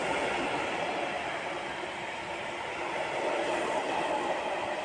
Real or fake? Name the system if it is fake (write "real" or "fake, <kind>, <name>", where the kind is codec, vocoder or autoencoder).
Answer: real